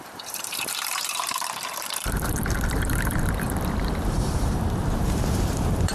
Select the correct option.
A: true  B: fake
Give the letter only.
B